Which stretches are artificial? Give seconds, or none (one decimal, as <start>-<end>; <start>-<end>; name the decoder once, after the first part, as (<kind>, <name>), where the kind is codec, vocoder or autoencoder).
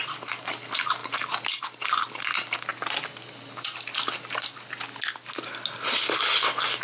none